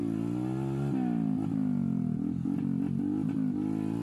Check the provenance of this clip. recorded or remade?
recorded